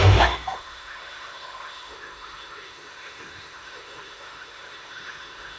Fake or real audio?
fake